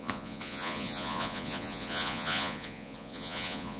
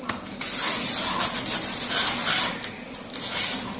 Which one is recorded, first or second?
second